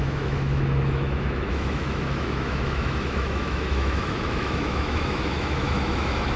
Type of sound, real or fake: fake